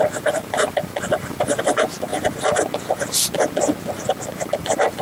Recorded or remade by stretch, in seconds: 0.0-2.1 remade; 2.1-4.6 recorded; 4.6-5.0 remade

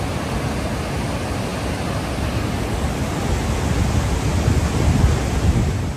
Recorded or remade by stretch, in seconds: 0.0-6.0 recorded

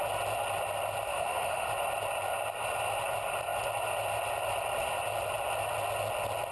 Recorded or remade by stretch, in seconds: 0.0-1.1 recorded; 1.1-1.7 remade; 1.7-6.5 recorded

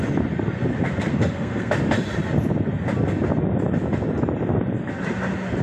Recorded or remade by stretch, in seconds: 0.0-1.1 recorded; 1.1-1.7 remade; 1.7-5.6 recorded

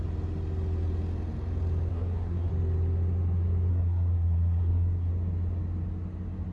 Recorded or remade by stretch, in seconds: 0.0-1.9 recorded; 1.9-2.5 remade; 2.5-3.7 recorded; 3.7-5.1 remade; 5.1-6.5 recorded

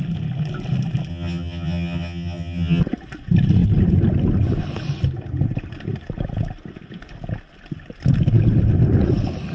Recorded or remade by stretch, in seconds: 0.0-1.1 recorded; 1.1-2.8 remade; 2.8-9.5 recorded

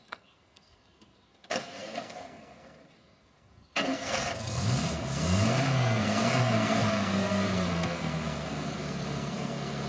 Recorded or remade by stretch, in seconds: 0.0-9.9 remade

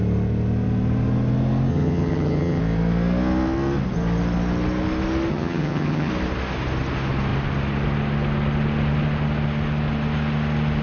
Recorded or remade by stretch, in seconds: 0.0-1.7 recorded; 1.7-2.6 remade; 2.6-5.3 recorded; 5.3-6.1 remade; 6.1-10.8 recorded